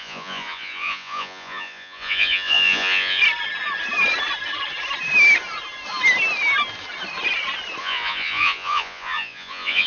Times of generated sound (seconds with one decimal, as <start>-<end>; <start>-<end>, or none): 0.0-3.2; 7.8-9.9